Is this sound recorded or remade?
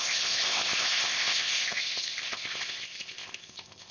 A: remade